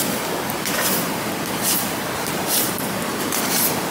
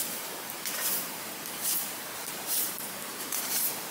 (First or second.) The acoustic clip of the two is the first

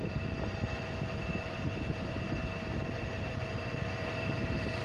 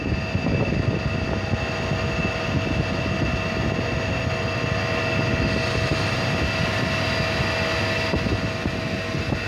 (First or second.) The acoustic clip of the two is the second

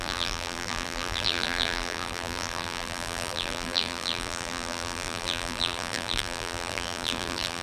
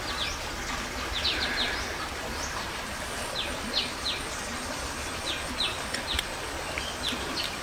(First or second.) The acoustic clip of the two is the second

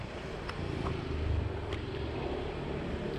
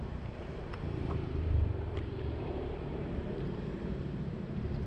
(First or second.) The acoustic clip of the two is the first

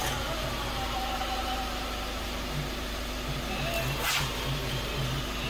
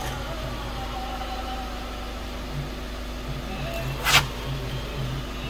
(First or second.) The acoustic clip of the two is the second